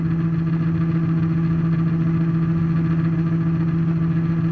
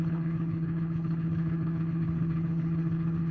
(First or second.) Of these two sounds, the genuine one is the first